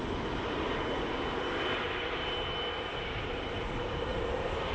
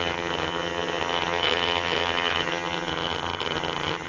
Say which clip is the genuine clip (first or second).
first